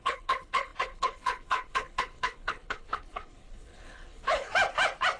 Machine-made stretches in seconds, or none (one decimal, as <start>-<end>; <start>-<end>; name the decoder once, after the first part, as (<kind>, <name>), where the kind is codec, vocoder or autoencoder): 0.0-4.5 (codec, HILCodec)

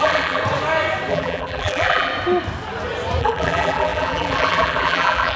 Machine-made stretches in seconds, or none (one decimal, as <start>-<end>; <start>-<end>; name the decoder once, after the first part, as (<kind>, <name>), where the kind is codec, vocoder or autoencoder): 0.0-0.4 (vocoder, BigVGAN v2); 1.1-2.1; 3.2-5.4

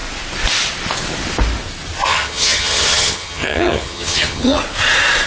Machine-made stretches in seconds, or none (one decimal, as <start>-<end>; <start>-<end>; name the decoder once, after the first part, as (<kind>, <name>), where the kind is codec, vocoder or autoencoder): 2.1-4.6 (vocoder, HiFi-GAN)

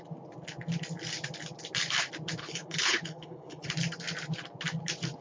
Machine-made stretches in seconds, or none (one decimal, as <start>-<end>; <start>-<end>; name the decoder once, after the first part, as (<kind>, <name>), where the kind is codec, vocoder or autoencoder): 2.4-3.7 (codec, HILCodec)

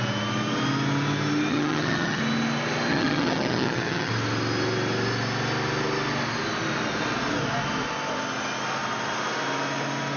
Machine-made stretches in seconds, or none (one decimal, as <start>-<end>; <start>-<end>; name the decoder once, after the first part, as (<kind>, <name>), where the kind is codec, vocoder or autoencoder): 1.5-2.2 (vocoder, HiFi-GAN); 2.9-4.1

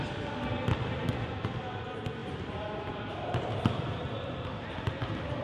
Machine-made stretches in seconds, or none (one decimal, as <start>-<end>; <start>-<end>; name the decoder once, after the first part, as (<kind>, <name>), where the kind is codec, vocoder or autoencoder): none